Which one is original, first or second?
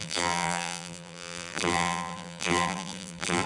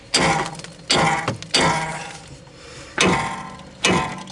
second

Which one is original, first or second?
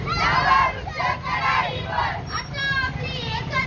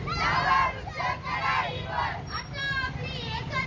second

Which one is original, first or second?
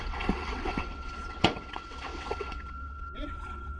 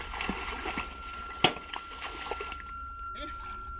second